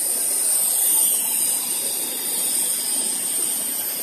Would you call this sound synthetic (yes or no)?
yes